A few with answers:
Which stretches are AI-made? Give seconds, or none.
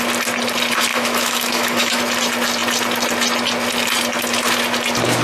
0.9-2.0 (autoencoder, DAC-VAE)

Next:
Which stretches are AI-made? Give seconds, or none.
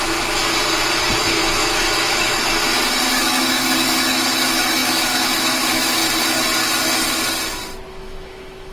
0.0-0.4 (autoencoder, DAC-VAE); 1.2-2.4; 3.1-6.0; 7.9-8.7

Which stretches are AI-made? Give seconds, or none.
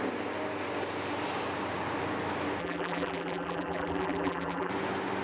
2.6-4.7 (vocoder, BigVGAN v2)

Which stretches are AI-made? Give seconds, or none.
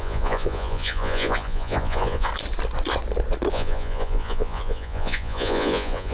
0.0-2.3 (vocoder, Vocos); 3.5-6.1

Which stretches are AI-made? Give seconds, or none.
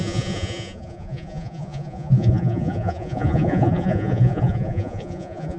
0.0-5.6 (vocoder, Vocos)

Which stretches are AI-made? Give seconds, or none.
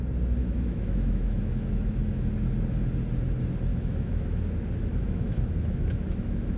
0.4-2.3 (autoencoder, DAC-VAE); 3.7-4.4; 4.9-6.6